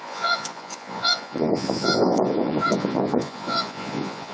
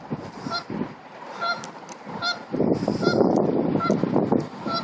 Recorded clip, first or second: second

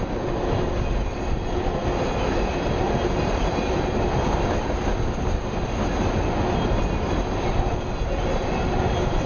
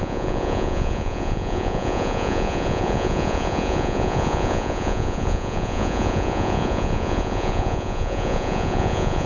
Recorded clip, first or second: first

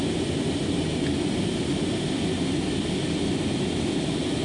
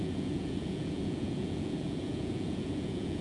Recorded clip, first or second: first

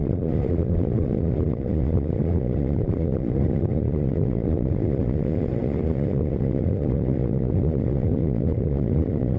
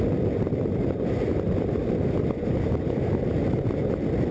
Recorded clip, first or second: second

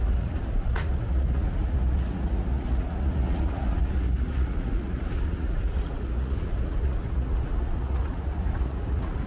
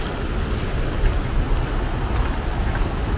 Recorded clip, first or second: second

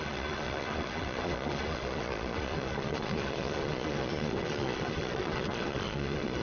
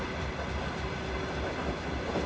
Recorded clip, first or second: second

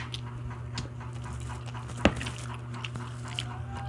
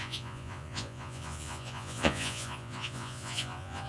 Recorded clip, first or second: first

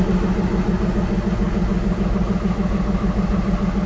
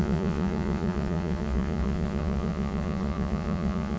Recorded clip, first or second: first